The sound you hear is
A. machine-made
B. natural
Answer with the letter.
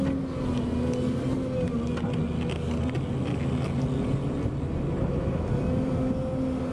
B